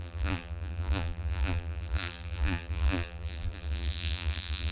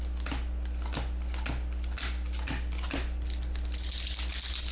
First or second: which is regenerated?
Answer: first